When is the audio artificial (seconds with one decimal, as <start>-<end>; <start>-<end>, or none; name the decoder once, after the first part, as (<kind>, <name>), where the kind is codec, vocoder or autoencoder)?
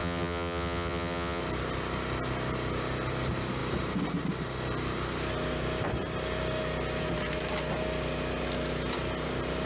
0.0-1.4 (vocoder, WaveNeXt)